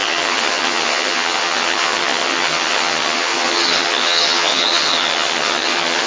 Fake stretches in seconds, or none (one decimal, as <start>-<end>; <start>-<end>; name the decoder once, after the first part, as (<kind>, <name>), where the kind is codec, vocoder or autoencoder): 0.0-6.1 (vocoder, HiFi-GAN)